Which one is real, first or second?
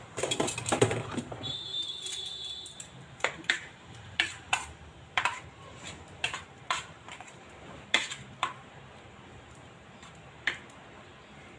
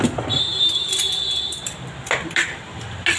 second